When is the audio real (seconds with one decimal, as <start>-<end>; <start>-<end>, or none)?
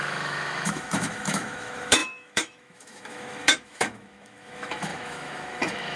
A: none